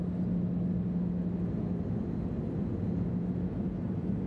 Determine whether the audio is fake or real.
real